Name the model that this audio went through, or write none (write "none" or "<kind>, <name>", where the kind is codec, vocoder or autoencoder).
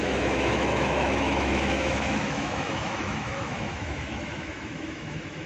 autoencoder, DAC-VAE